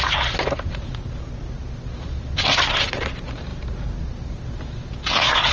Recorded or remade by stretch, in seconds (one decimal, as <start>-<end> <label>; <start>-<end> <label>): 0.0-5.5 recorded